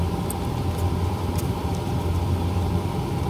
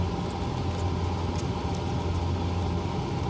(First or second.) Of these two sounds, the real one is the second